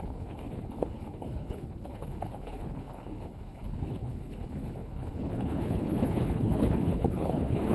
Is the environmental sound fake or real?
fake